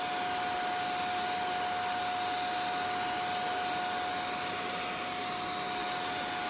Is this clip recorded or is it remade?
recorded